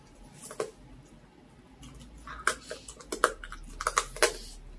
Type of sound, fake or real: real